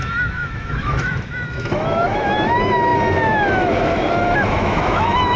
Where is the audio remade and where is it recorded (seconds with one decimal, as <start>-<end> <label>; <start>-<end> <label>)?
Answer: 0.0-5.4 remade